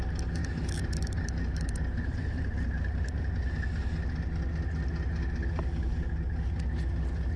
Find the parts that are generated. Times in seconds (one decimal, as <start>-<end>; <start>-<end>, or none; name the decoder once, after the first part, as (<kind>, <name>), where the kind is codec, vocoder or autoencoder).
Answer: 0.4-3.3 (vocoder, BigVGAN v2)